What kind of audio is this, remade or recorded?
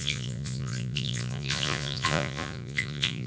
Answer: remade